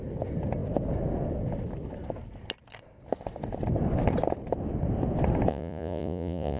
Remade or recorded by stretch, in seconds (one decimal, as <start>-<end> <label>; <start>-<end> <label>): 0.0-5.5 recorded; 5.5-6.6 remade